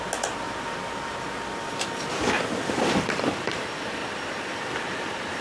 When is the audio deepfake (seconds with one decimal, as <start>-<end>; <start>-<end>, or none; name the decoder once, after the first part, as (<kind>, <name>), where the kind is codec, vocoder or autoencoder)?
none

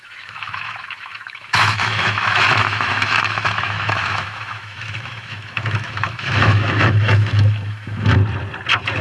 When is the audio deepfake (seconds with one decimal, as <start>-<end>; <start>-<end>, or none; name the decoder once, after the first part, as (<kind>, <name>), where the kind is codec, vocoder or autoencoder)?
0.0-8.2 (autoencoder, DAC-VAE)

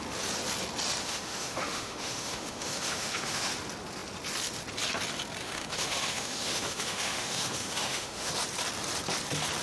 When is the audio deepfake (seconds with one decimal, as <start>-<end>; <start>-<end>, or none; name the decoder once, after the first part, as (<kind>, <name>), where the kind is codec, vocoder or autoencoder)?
1.0-3.5 (autoencoder, DAC-VAE); 5.4-8.3

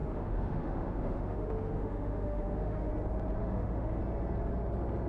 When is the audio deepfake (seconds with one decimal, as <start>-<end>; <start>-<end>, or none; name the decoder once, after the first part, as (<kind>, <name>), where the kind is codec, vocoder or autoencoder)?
0.0-2.9 (autoencoder, DAC-VAE); 3.4-4.0

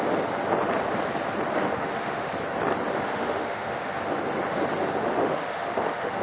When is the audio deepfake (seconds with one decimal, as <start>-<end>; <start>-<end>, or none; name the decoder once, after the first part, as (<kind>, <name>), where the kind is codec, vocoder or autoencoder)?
1.5-2.3 (autoencoder, DAC-VAE); 3.1-3.9; 5.0-6.2

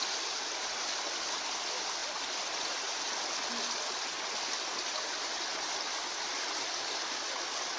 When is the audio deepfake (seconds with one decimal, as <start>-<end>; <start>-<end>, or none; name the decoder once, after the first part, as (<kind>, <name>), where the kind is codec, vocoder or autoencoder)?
none